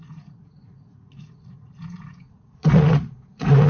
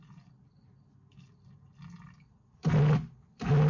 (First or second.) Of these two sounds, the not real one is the first